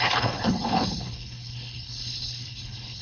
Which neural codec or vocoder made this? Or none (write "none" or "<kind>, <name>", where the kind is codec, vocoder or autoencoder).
codec, HILCodec